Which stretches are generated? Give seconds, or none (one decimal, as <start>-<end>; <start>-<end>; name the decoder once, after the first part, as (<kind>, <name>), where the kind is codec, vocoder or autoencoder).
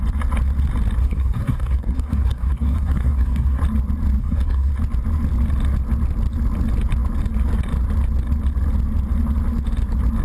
1.0-3.6 (codec, SNAC); 4.2-4.7